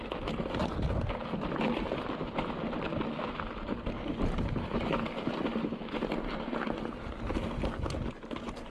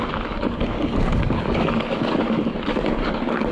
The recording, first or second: first